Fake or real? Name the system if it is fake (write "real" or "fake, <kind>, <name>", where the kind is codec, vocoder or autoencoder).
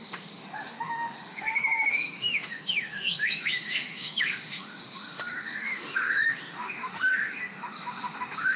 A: fake, autoencoder, DAC-VAE